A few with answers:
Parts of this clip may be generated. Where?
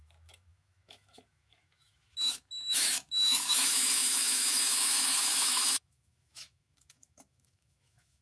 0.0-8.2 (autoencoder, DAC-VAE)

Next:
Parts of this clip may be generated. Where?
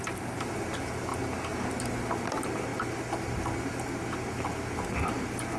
none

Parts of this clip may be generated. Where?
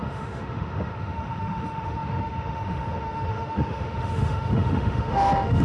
0.0-5.6 (autoencoder, DAC-VAE)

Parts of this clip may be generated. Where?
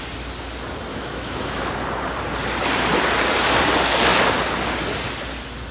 0.9-1.7 (autoencoder, DAC-VAE)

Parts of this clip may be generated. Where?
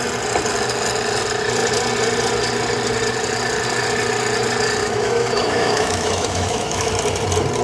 4.8-6.9 (autoencoder, DAC-VAE)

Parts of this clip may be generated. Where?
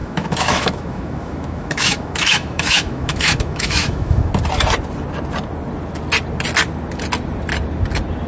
0.0-4.3 (autoencoder, DAC-VAE)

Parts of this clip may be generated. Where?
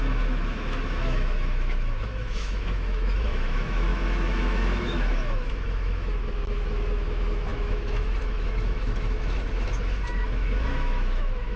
0.0-11.6 (autoencoder, DAC-VAE)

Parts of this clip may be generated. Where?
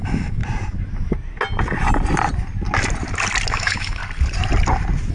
0.0-0.4 (autoencoder, DAC-VAE); 3.5-4.0